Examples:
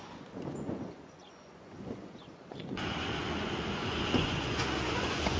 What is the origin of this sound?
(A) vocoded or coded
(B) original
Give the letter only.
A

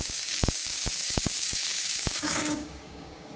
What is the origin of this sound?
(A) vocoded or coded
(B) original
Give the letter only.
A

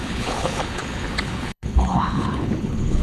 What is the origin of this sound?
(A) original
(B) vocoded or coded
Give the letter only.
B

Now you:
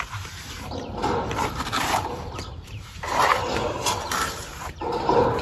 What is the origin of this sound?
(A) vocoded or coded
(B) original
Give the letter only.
A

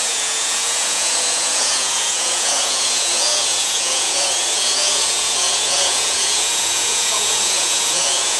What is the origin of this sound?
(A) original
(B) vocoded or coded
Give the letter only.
B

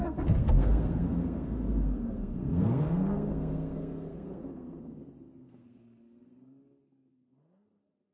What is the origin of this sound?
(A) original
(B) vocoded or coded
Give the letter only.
B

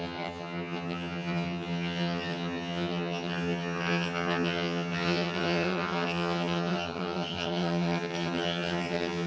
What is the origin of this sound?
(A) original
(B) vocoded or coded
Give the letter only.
B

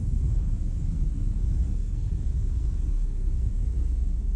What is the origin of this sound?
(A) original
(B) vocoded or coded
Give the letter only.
B